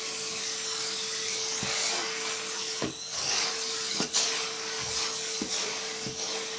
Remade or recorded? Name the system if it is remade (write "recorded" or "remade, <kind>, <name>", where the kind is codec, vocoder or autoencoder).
remade, codec, DAC